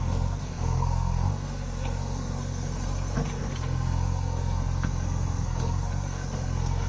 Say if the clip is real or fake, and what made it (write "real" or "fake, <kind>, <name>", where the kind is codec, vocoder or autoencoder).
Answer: fake, codec, SNAC